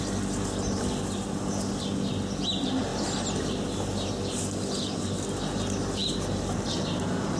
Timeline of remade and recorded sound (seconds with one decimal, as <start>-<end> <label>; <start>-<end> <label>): 0.0-7.4 recorded